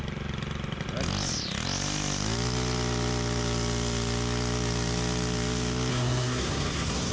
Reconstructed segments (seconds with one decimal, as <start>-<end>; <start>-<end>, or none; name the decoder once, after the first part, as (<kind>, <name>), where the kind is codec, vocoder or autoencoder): 5.9-7.1 (codec, SNAC)